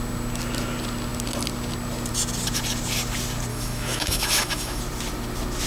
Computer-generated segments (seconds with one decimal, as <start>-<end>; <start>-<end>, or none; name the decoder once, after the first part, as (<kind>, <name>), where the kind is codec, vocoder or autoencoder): 3.5-4.8 (autoencoder, DAC-VAE)